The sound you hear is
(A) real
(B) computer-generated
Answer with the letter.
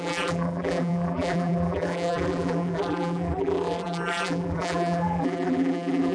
B